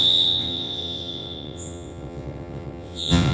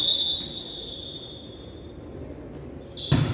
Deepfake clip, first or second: first